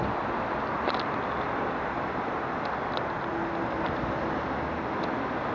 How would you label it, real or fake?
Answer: real